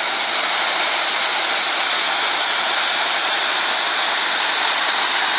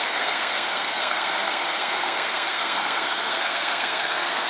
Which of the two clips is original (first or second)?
first